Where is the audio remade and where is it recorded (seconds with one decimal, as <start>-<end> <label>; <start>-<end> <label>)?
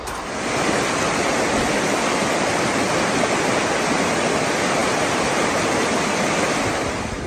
0.0-7.3 recorded